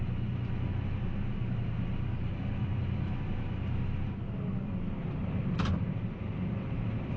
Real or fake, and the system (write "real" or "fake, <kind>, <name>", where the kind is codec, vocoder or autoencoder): real